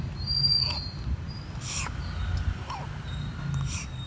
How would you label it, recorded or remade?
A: recorded